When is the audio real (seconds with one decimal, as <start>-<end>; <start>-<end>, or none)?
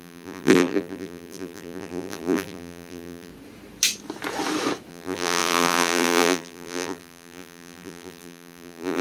3.3-4.9